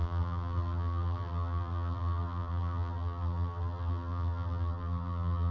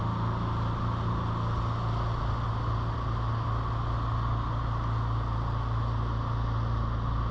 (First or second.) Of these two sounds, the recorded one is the second